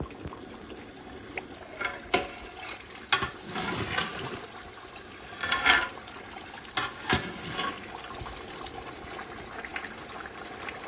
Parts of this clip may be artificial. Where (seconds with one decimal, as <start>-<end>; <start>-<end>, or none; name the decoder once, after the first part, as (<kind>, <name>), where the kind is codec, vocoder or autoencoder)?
none